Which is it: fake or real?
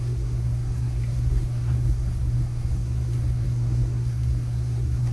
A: fake